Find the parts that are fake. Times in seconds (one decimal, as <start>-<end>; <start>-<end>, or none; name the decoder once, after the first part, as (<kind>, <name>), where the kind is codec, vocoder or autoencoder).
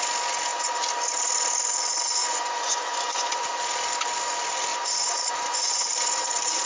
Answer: 2.2-3.5 (vocoder, Vocos); 4.7-5.9